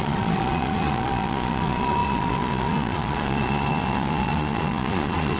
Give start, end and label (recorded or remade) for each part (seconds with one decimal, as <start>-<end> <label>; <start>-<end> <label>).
0.0-5.4 remade